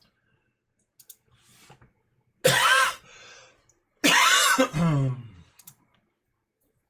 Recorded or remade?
recorded